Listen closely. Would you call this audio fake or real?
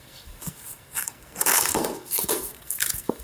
fake